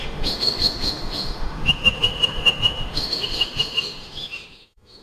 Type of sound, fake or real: fake